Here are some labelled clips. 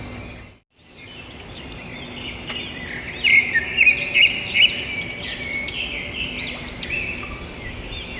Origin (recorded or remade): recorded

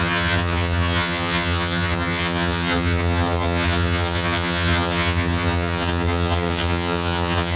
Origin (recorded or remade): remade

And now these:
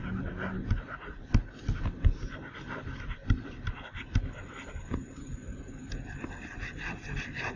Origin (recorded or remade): recorded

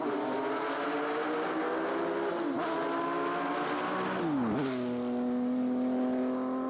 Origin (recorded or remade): recorded